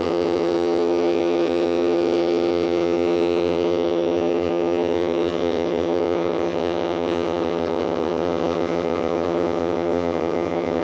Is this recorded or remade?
remade